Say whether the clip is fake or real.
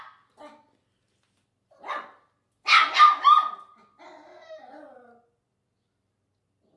real